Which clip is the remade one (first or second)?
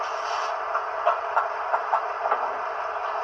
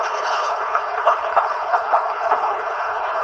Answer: second